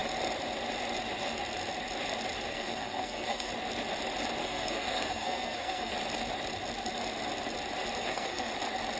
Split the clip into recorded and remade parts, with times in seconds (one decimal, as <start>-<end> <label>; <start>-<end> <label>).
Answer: 0.0-2.5 recorded; 2.5-3.5 remade; 3.5-4.4 recorded; 4.4-5.9 remade; 5.9-8.0 recorded; 8.0-8.5 remade; 8.5-9.0 recorded